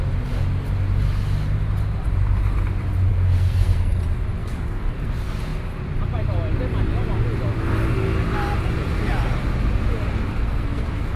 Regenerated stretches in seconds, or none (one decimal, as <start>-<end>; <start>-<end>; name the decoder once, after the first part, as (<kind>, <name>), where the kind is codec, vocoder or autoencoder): 3.1-4.0 (codec, SNAC); 4.4-5.1; 10.3-11.2